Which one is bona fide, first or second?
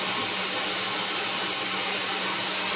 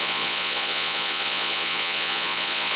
first